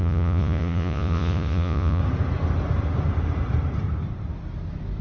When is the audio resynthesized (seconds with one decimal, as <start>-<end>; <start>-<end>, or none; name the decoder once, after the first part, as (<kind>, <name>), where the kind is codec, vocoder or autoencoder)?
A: 0.0-2.0 (vocoder, Vocos)